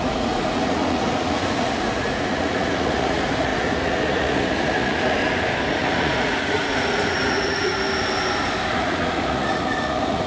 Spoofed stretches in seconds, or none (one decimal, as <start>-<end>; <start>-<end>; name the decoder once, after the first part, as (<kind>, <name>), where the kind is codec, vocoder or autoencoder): 0.0-5.2 (vocoder, Vocos); 5.7-7.7; 8.7-10.3